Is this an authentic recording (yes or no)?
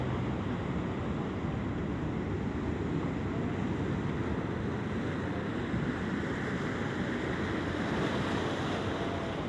yes